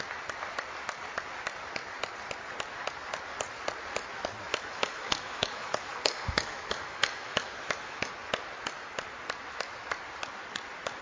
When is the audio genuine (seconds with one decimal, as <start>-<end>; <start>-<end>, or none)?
0.0-4.5; 8.1-11.0